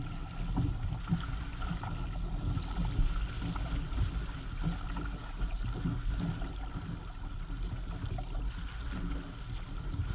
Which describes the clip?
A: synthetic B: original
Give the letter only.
B